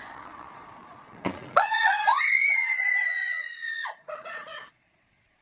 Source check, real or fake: fake